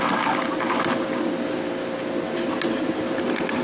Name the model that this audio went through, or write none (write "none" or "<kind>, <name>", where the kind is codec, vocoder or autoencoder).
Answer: none